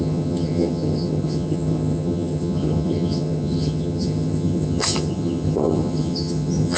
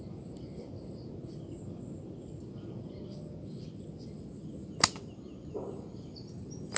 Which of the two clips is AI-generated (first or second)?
first